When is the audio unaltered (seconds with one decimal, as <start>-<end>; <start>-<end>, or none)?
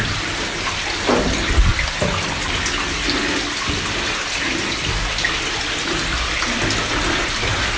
0.0-7.8